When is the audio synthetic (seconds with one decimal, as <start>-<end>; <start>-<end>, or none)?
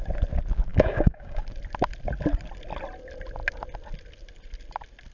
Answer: 0.7-1.4